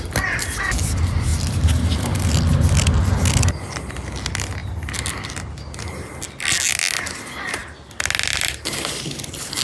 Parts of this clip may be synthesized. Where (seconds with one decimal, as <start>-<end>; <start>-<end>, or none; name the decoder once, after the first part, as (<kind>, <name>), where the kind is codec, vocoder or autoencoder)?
none